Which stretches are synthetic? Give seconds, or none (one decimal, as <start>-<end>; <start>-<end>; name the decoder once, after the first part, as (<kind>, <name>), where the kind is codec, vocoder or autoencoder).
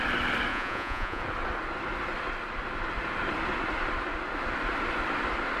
0.5-1.2 (vocoder, Vocos)